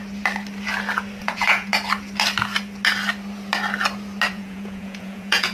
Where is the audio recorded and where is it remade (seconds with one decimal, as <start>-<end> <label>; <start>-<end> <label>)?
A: 0.0-1.2 recorded; 1.2-1.7 remade; 1.7-4.3 recorded; 4.3-5.5 remade